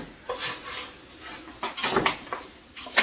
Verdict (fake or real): real